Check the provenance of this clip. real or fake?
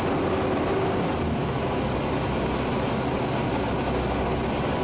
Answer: real